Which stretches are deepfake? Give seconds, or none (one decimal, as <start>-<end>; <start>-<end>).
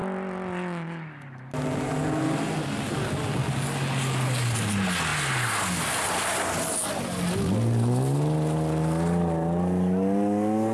none